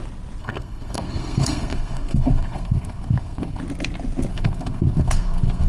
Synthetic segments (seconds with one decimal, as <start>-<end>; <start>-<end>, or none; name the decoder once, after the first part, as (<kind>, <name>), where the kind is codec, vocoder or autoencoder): 0.4-3.6 (codec, SNAC); 4.3-5.7